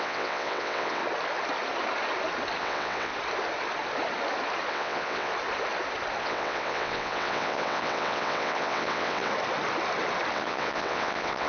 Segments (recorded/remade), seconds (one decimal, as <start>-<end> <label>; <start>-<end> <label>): 0.0-1.0 remade; 1.0-2.6 recorded; 2.6-3.1 remade; 3.1-4.7 recorded; 4.7-5.3 remade; 5.3-6.2 recorded; 6.2-9.3 remade; 9.3-10.3 recorded; 10.3-11.5 remade